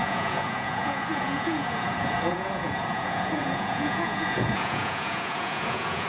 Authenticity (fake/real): fake